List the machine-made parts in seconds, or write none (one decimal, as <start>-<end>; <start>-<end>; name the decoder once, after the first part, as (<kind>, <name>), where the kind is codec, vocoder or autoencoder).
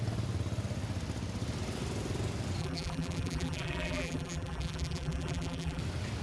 2.6-5.8 (vocoder, BigVGAN v2)